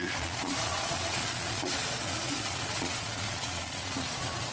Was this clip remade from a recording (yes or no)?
yes